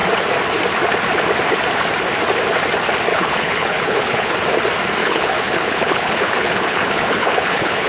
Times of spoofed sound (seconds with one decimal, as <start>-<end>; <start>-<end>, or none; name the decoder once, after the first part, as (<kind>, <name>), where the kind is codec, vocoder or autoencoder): 3.1-4.3 (codec, HILCodec); 5.0-7.9